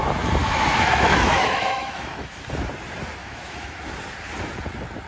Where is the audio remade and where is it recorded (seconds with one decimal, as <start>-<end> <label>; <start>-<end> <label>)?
0.0-0.4 recorded; 0.4-2.4 remade; 2.4-3.2 recorded; 3.2-3.8 remade; 3.8-5.1 recorded

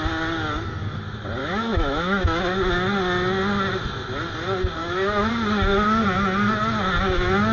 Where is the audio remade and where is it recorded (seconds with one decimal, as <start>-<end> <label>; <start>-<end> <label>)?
0.0-1.4 recorded; 1.4-2.4 remade; 2.4-4.8 recorded; 4.8-5.3 remade; 5.3-7.5 recorded

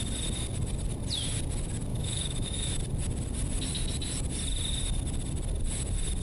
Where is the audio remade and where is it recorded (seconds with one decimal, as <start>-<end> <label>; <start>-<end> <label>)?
0.0-1.9 recorded; 1.9-2.8 remade; 2.8-6.2 recorded

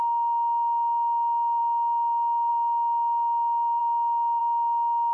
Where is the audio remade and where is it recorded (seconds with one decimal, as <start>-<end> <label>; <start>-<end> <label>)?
0.0-1.6 recorded; 1.6-2.5 remade; 2.5-5.1 recorded

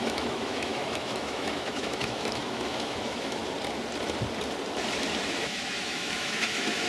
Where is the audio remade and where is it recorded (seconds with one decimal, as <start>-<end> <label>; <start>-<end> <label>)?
0.0-3.4 remade; 3.4-5.4 recorded; 5.4-6.9 remade

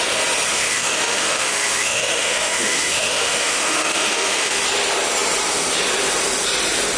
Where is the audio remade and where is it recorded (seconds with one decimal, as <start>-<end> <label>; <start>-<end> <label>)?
0.0-0.5 recorded; 0.5-4.6 remade; 4.6-7.0 recorded

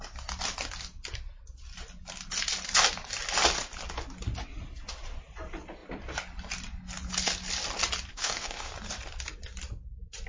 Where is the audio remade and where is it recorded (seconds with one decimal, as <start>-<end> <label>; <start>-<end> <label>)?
0.0-8.1 recorded; 8.1-8.7 remade; 8.7-10.3 recorded